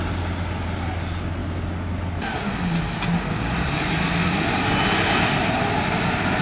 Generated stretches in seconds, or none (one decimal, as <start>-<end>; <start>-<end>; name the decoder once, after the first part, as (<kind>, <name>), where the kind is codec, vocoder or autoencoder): none